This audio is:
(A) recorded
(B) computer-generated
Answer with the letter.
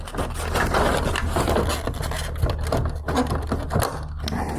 A